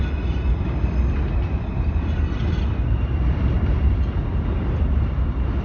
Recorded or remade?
recorded